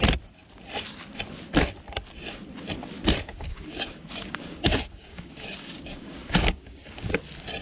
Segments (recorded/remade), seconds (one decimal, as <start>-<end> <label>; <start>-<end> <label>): 0.0-3.3 recorded; 3.3-7.1 remade; 7.1-7.6 recorded